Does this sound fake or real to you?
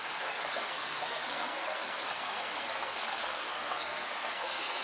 fake